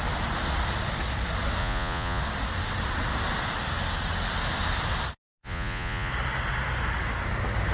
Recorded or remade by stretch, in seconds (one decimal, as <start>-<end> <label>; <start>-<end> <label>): 0.0-1.6 recorded; 1.6-2.2 remade; 2.2-5.4 recorded; 5.4-6.1 remade; 6.1-7.7 recorded